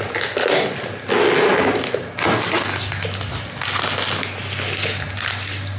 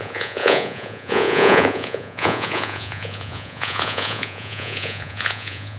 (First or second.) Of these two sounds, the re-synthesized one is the second